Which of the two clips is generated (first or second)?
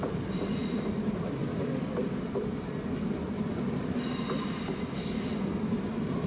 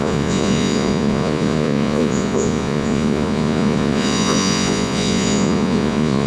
second